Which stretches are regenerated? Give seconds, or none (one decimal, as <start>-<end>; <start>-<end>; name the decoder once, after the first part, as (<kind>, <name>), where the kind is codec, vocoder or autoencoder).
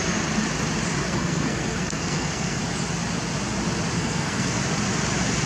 1.0-2.6 (codec, SNAC); 4.0-4.6